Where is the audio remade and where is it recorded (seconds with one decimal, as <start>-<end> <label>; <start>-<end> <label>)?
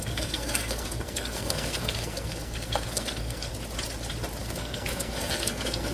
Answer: 0.0-3.5 remade; 3.5-4.4 recorded; 4.4-5.9 remade